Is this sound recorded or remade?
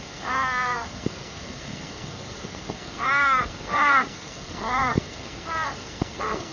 remade